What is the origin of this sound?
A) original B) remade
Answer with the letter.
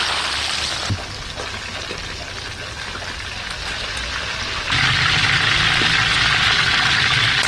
A